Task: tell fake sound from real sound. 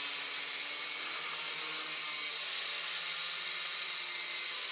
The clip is real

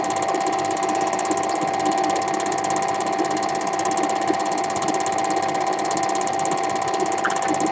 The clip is real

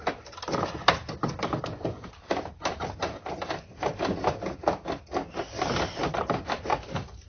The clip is real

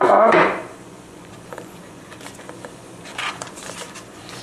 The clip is fake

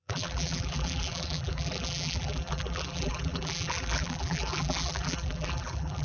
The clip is fake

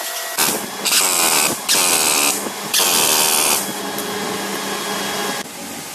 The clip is real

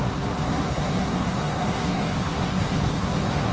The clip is fake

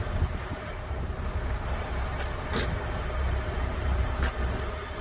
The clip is fake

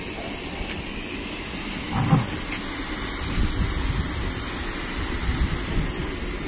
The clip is real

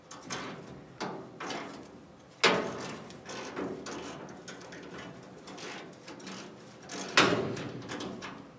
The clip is real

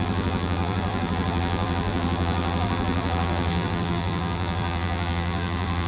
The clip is fake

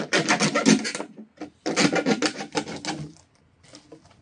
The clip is real